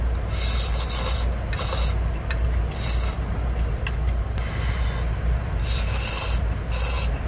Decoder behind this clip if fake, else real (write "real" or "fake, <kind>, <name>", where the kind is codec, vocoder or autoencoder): real